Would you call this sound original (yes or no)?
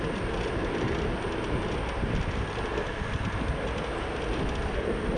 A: yes